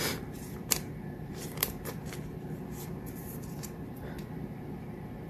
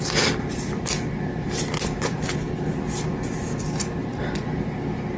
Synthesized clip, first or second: first